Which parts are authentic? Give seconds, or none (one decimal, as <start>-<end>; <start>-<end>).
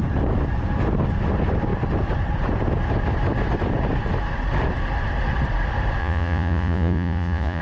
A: 0.0-6.0